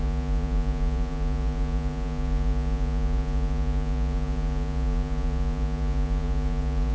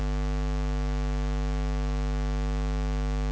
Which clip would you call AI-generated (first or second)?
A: first